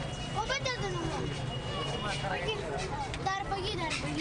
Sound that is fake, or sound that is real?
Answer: real